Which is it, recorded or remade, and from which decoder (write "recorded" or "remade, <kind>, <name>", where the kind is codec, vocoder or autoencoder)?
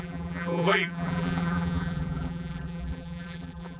remade, vocoder, BigVGAN v2